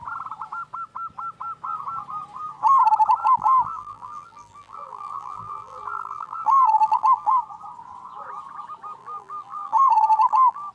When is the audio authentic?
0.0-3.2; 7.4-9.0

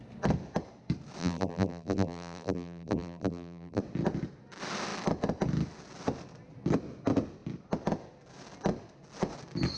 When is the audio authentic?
0.0-1.2; 3.8-9.8

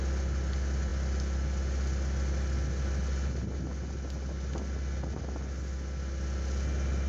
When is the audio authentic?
0.0-7.1

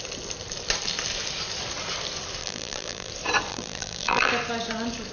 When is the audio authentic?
0.0-2.4; 3.1-3.5; 4.3-5.1

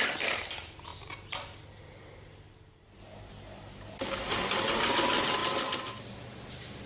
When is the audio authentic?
0.9-3.0; 5.4-5.9